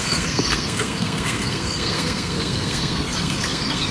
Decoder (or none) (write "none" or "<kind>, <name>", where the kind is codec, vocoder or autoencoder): codec, SNAC